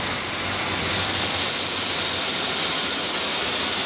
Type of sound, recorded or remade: recorded